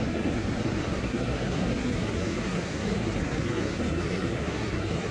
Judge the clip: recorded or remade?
remade